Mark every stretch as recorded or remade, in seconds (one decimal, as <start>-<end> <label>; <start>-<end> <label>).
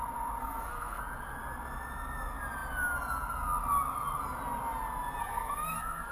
0.0-0.4 recorded; 0.4-1.0 remade; 1.0-5.2 recorded; 5.2-6.1 remade